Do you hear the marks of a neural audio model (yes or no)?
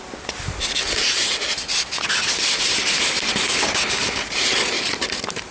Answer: no